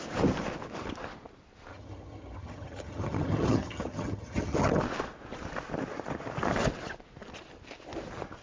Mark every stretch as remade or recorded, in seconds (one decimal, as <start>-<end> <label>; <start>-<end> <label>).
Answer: 0.0-1.7 recorded; 1.7-4.8 remade; 4.8-8.4 recorded